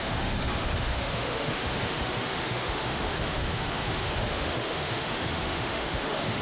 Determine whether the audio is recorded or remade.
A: remade